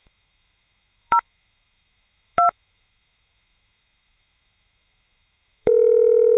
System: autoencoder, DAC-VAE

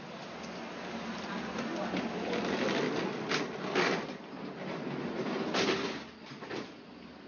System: none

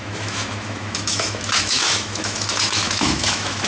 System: autoencoder, DAC-VAE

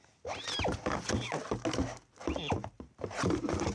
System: none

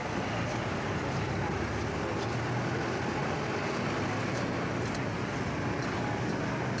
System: none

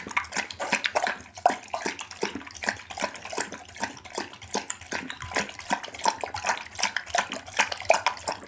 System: none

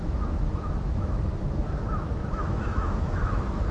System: autoencoder, DAC-VAE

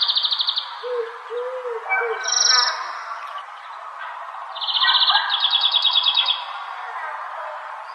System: none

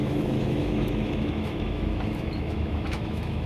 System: autoencoder, DAC-VAE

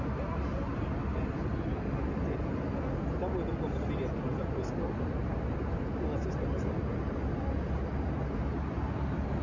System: none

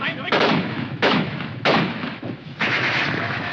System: autoencoder, DAC-VAE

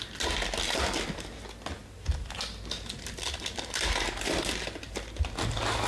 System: none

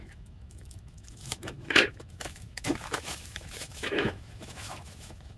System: autoencoder, DAC-VAE